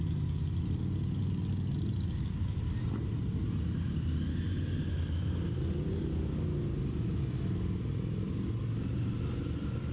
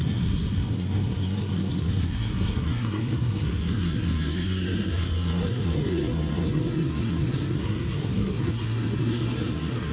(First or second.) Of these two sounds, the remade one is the second